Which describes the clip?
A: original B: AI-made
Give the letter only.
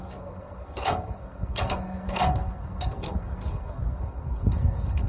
B